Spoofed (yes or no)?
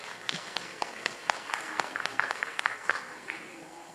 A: yes